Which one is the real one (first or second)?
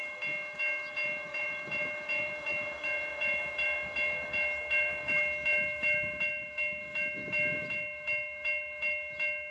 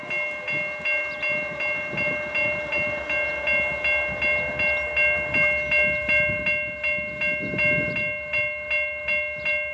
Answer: second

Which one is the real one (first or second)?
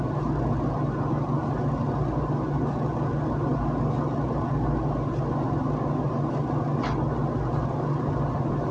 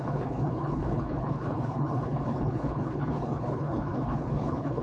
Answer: first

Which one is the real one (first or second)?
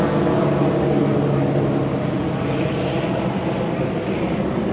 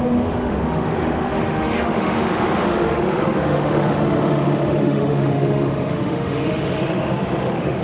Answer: first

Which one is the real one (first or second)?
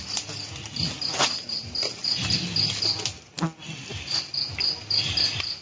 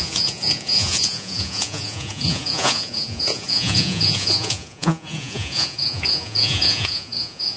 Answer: first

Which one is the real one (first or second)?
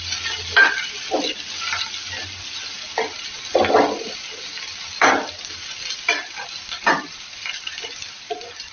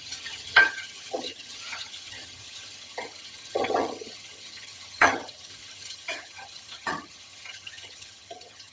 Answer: first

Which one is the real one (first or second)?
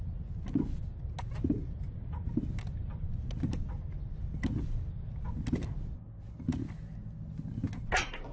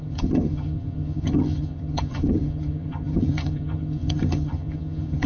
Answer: first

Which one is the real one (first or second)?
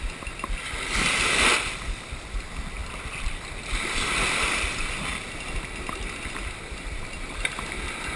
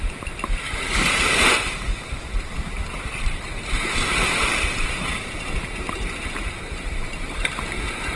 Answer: first